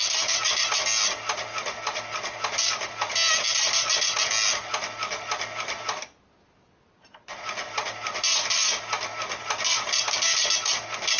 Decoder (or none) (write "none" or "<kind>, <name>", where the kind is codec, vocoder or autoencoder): none